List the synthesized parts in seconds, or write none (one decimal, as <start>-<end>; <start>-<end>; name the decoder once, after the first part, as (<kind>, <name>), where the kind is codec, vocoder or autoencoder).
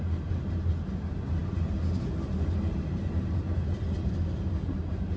none